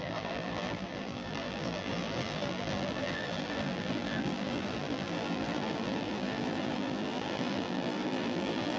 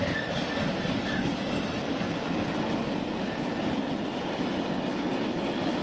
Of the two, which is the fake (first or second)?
first